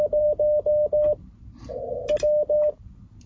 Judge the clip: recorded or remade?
recorded